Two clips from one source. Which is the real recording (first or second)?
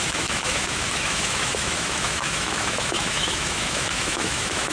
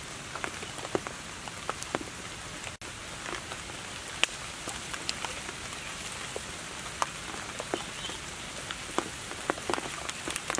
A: second